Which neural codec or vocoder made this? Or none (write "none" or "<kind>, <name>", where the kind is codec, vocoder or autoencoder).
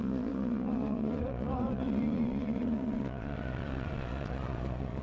vocoder, Vocos